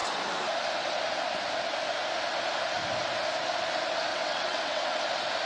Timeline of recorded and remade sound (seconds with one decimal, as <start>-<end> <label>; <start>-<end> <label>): 0.0-4.1 recorded; 4.1-5.0 remade; 5.0-5.5 recorded